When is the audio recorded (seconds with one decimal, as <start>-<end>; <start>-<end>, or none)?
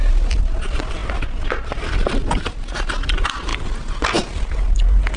0.0-5.2